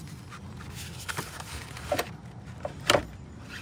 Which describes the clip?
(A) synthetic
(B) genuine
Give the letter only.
B